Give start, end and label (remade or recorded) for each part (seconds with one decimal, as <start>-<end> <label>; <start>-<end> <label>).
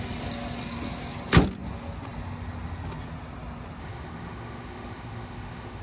0.0-3.8 recorded; 3.8-5.8 remade